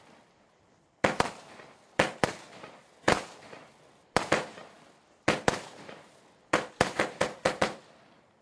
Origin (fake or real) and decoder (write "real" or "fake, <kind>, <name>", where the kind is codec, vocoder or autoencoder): fake, vocoder, BigVGAN v2